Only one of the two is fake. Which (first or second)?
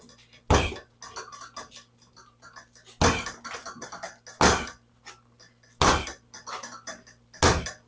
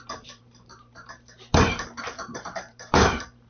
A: second